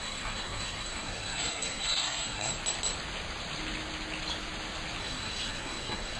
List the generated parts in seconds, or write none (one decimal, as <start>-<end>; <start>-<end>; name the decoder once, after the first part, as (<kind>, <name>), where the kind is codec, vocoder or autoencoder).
0.0-2.5 (codec, SNAC); 5.0-6.2

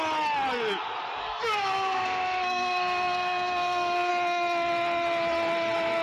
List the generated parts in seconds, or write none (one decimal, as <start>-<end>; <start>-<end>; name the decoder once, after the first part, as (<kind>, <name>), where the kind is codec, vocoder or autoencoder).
1.2-4.1 (codec, SNAC)

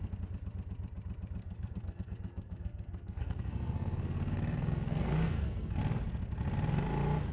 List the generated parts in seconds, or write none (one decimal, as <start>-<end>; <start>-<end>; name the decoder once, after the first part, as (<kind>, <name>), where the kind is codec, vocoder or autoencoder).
1.4-5.8 (codec, SNAC)

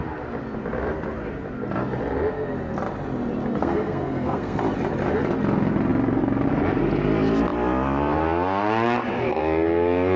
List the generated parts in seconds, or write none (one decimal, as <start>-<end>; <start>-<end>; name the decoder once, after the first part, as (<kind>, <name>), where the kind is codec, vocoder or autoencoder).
3.5-4.6 (codec, SNAC)

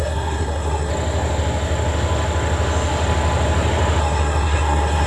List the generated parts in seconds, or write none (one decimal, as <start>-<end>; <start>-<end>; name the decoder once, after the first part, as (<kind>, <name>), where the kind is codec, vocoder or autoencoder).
0.0-0.9 (codec, SNAC); 4.0-5.1